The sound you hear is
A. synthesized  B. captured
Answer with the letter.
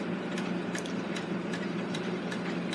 A